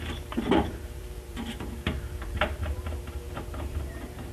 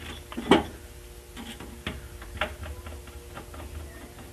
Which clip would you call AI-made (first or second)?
first